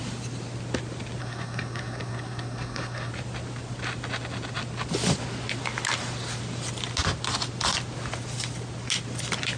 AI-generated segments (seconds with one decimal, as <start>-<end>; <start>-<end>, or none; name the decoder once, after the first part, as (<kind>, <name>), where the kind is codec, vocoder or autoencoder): 1.2-3.1 (codec, SNAC)